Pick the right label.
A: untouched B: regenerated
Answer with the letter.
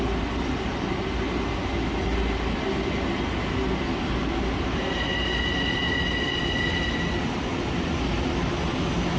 A